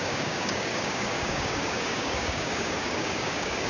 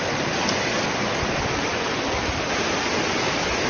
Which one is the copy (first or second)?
first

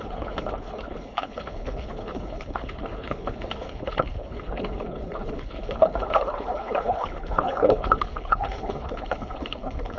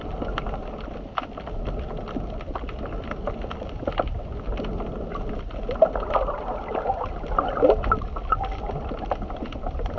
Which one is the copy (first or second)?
first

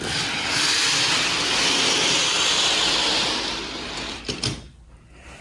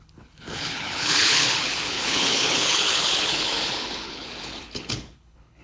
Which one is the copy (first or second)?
second